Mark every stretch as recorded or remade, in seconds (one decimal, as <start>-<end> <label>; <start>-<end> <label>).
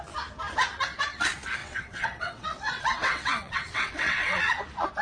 0.0-1.6 recorded; 1.6-4.4 remade; 4.4-5.0 recorded